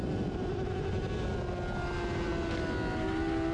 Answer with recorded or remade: recorded